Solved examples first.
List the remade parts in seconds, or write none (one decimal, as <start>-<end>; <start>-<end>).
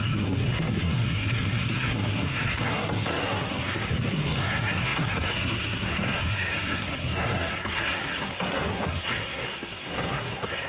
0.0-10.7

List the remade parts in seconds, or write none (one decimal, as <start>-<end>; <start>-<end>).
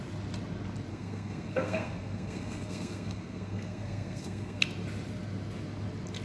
0.9-4.6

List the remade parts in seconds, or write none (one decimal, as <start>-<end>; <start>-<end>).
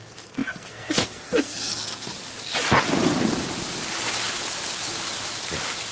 0.0-2.1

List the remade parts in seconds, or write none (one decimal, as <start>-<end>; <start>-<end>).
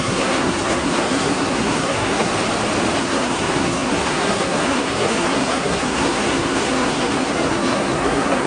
0.0-2.3; 3.0-8.5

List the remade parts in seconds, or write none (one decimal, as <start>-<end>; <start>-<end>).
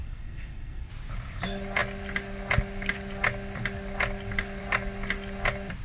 0.0-0.9